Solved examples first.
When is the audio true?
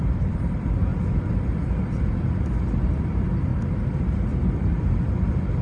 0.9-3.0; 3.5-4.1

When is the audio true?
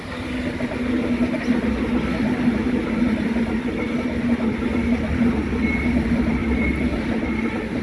0.0-6.4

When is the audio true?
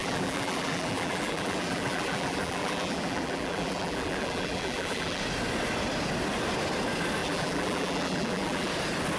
5.2-7.2; 8.7-9.2